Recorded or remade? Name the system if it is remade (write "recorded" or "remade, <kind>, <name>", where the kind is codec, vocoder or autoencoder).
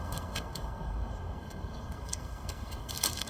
remade, codec, SNAC